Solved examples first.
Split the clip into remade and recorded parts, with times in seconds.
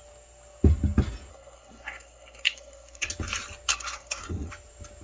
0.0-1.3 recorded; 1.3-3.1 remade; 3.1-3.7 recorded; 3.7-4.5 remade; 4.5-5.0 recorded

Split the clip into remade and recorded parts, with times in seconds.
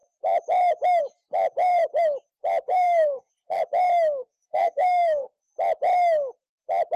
0.0-2.7 recorded; 2.7-3.6 remade; 3.6-4.2 recorded; 4.2-5.4 remade; 5.4-7.0 recorded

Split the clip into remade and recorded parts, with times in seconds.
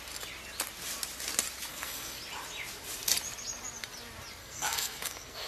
0.0-1.7 recorded; 1.7-2.2 remade; 2.2-4.4 recorded; 4.4-5.5 remade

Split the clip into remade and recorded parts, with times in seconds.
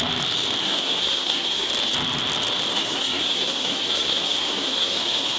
0.0-0.6 recorded; 0.6-1.7 remade; 1.7-2.7 recorded; 2.7-5.4 remade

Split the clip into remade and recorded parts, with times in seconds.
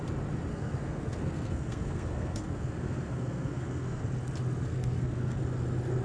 0.0-0.5 recorded; 0.5-4.0 remade; 4.0-4.7 recorded; 4.7-5.4 remade; 5.4-6.0 recorded